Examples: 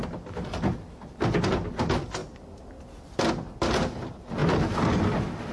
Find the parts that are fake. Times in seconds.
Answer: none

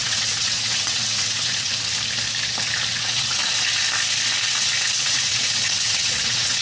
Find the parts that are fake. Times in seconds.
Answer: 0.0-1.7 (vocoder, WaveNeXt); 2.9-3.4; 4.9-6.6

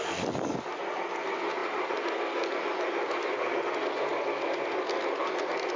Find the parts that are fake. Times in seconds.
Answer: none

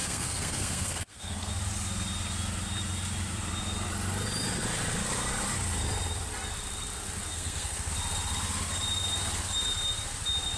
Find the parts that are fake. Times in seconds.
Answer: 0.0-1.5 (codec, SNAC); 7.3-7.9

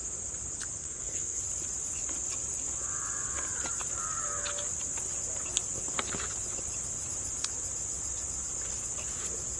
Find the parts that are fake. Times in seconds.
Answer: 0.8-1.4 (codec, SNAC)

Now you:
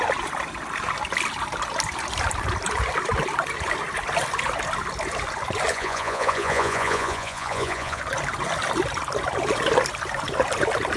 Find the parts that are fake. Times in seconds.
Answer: 5.7-8.0 (vocoder, Vocos)

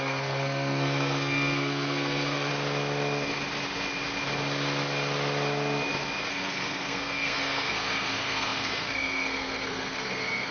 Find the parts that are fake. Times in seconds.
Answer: 0.0-2.5 (codec, SNAC); 6.3-10.5

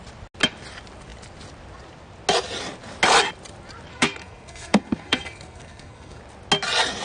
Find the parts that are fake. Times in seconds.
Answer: 3.9-6.2 (codec, SNAC)